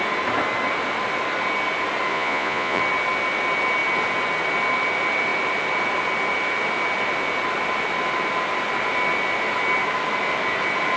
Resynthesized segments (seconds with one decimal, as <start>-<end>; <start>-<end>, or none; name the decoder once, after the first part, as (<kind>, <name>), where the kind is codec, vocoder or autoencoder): 2.1-2.8 (vocoder, Vocos)